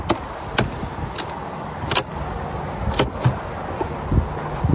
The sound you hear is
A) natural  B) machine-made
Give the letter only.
A